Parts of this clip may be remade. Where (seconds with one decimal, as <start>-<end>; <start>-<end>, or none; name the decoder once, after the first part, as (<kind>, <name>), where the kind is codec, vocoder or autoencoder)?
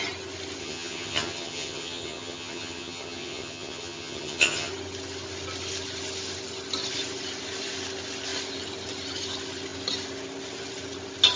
0.6-4.7 (vocoder, HiFi-GAN)